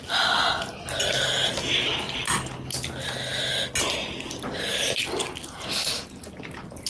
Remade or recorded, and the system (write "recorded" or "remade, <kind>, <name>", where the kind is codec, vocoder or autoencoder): recorded